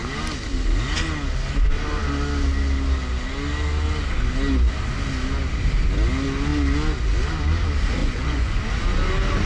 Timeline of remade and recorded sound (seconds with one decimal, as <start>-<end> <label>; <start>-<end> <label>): 0.0-8.0 recorded; 8.0-8.6 remade; 8.6-9.5 recorded